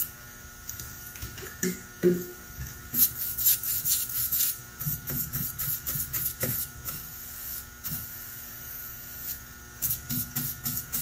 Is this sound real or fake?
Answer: fake